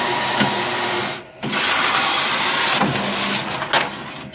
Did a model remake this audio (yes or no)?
no